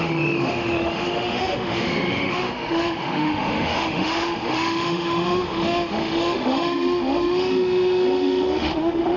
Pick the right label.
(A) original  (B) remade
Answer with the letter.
B